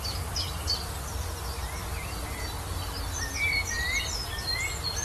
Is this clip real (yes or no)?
yes